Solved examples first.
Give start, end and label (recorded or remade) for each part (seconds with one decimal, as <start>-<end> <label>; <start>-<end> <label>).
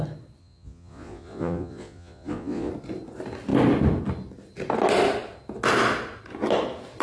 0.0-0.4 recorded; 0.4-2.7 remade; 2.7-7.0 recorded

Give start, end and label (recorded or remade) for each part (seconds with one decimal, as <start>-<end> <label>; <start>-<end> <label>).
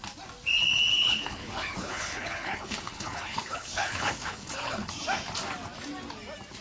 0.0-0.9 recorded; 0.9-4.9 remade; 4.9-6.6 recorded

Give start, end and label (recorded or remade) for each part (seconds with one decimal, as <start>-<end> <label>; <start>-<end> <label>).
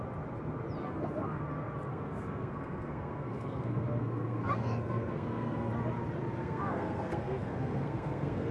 0.0-0.8 recorded; 0.8-1.4 remade; 1.4-1.9 recorded; 1.9-5.7 remade; 5.7-6.4 recorded; 6.4-8.5 remade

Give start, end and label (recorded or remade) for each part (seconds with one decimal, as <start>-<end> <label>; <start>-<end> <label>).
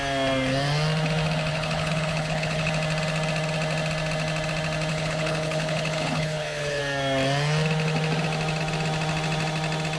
0.0-1.5 recorded; 1.5-2.7 remade; 2.7-4.9 recorded; 4.9-6.8 remade; 6.8-10.0 recorded